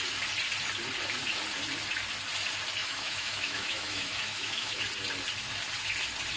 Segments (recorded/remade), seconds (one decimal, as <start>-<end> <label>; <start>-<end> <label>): 0.0-2.8 recorded; 2.8-4.8 remade; 4.8-6.4 recorded